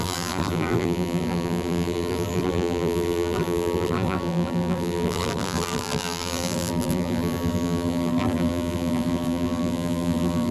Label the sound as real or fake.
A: fake